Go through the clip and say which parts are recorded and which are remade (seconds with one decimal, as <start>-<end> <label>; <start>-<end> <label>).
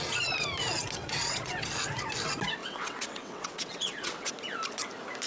0.0-1.0 recorded; 1.0-1.7 remade; 1.7-2.6 recorded; 2.6-4.3 remade; 4.3-5.3 recorded